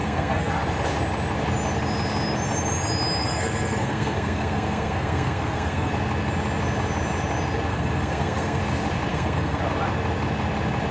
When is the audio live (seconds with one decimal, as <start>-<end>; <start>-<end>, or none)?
0.5-3.2; 5.9-7.7; 8.6-9.1; 9.6-10.9